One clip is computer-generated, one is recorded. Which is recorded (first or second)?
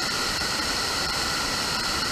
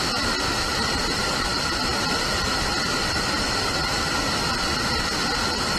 second